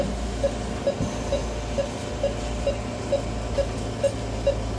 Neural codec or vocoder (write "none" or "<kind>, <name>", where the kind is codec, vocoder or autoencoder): none